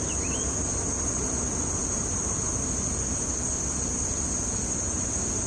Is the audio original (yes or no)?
yes